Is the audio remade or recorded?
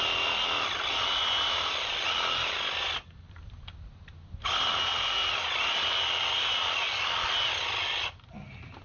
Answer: recorded